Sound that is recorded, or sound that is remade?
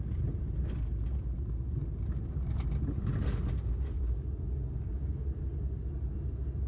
recorded